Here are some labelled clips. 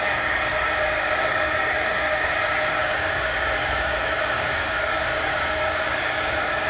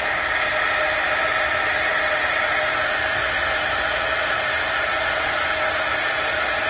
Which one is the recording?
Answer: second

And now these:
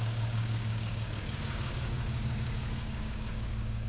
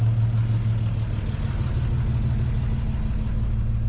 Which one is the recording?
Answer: second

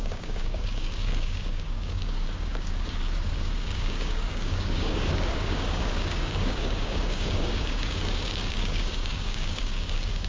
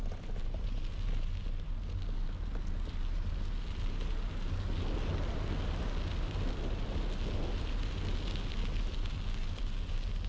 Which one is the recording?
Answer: second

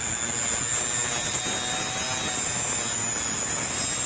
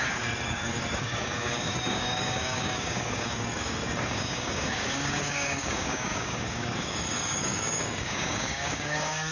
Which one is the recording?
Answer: first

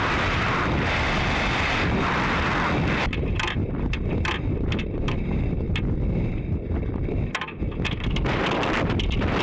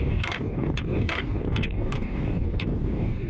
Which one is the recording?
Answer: first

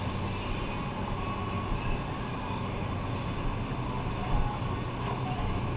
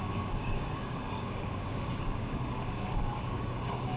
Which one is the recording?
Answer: first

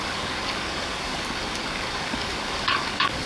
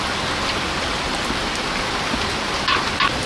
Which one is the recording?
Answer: second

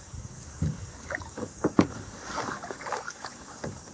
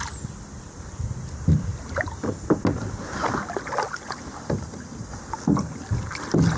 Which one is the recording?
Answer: second